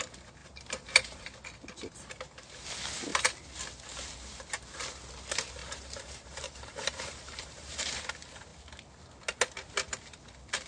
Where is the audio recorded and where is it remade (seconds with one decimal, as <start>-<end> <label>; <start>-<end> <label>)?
0.0-0.4 recorded; 0.4-1.3 remade; 1.3-5.6 recorded; 5.6-8.0 remade; 8.0-10.7 recorded